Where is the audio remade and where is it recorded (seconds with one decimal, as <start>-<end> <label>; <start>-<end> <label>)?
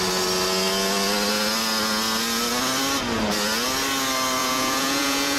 0.0-4.4 recorded; 4.4-5.4 remade